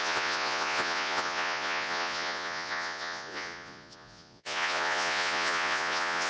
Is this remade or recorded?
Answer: remade